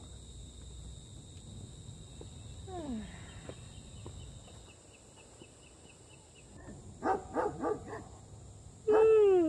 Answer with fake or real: real